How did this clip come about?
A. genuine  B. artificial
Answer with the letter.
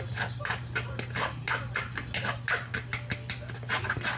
A